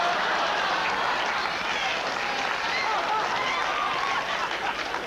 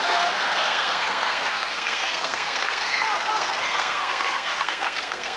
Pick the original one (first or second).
first